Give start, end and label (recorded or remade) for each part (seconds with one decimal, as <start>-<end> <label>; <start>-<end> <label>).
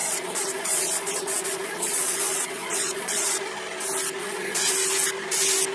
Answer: 0.0-3.4 remade; 3.4-4.2 recorded; 4.2-4.7 remade; 4.7-5.7 recorded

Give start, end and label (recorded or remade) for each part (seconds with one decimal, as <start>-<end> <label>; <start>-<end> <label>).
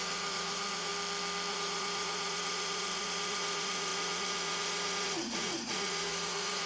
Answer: 0.0-0.9 remade; 0.9-1.5 recorded; 1.5-6.7 remade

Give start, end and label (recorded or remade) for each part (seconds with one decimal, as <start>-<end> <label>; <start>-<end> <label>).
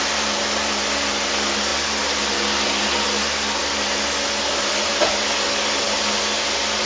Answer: 0.0-6.9 recorded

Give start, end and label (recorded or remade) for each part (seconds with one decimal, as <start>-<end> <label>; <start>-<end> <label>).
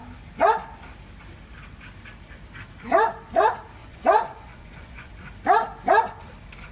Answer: 0.0-3.8 recorded; 3.8-5.1 remade; 5.1-6.7 recorded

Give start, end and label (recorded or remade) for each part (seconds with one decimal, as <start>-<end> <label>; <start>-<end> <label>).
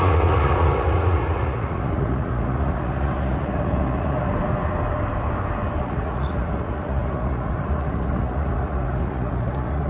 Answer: 0.0-4.3 remade; 4.3-5.8 recorded; 5.8-9.9 remade